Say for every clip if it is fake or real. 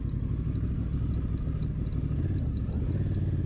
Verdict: real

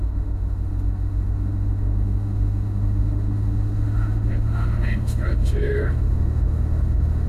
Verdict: fake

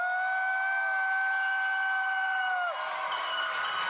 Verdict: real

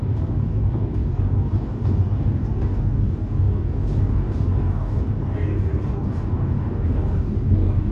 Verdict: fake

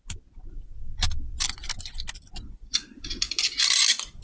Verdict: real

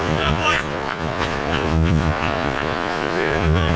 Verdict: fake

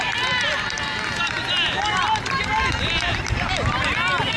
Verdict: real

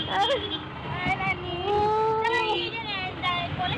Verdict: real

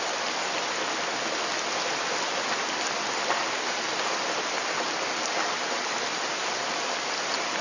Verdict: real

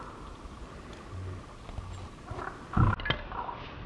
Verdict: real